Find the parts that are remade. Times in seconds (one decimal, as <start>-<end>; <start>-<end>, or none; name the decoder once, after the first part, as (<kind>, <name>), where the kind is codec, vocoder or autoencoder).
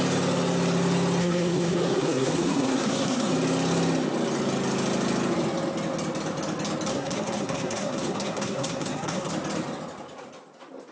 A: 1.2-3.3 (codec, SNAC); 6.9-9.3